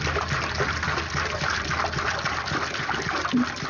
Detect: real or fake real